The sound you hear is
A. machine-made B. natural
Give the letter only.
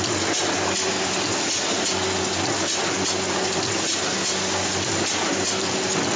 B